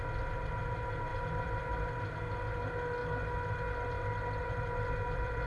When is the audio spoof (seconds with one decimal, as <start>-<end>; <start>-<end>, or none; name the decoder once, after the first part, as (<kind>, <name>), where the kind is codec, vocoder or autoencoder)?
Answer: 1.1-1.9 (vocoder, BigVGAN v2); 4.4-5.5